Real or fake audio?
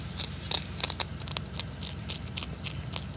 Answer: real